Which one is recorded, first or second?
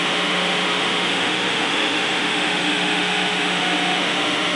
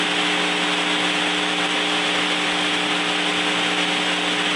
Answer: second